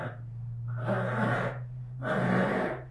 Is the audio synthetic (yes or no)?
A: no